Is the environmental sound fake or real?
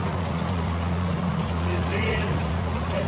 fake